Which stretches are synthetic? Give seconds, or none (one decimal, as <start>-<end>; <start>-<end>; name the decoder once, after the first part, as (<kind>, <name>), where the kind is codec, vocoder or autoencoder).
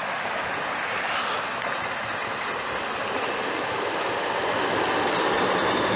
0.0-0.5 (autoencoder, DAC-VAE)